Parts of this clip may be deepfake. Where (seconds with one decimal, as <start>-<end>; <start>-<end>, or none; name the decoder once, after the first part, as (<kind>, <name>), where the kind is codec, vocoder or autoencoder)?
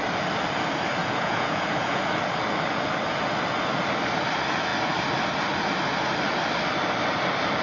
1.0-2.0 (vocoder, Vocos)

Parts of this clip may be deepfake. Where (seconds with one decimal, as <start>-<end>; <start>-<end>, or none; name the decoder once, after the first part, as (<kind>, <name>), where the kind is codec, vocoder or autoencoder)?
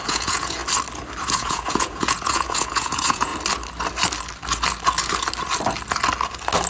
0.0-0.6 (vocoder, Vocos); 1.3-3.3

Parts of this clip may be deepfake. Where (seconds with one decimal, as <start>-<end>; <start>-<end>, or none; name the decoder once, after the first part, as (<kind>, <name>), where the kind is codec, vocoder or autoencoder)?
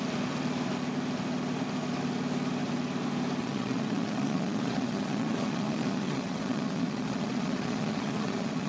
3.4-8.7 (vocoder, Vocos)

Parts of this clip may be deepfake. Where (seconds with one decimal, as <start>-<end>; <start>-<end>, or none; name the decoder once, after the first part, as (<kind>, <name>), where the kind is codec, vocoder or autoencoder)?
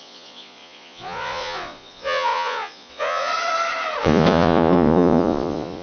0.0-3.3 (vocoder, Vocos); 4.0-5.8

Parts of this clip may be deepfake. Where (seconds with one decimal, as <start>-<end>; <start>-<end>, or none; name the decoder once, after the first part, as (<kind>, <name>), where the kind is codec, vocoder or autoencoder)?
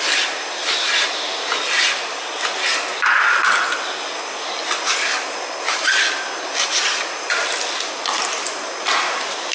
none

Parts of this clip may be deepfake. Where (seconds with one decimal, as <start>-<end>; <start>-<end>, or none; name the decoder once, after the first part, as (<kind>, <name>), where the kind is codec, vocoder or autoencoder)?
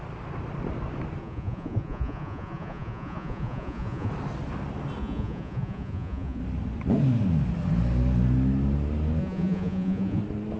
1.2-4.1 (vocoder, Vocos); 5.0-6.4; 9.2-10.2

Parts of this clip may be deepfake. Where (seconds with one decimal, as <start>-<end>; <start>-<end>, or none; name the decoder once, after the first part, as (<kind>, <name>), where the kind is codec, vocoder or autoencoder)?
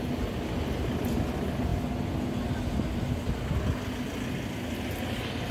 none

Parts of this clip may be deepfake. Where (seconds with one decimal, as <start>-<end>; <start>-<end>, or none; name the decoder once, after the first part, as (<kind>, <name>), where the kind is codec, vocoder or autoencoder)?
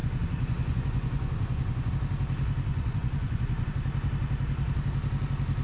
0.0-1.9 (vocoder, Vocos); 2.7-3.7